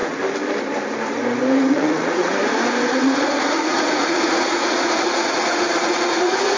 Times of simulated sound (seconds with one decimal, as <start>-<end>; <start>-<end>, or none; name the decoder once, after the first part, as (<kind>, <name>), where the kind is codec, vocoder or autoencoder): 1.6-2.3 (vocoder, Vocos); 2.9-6.6